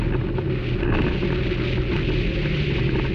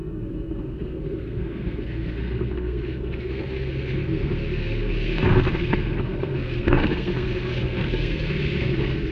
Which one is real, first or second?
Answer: first